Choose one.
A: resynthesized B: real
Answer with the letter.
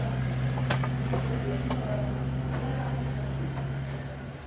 B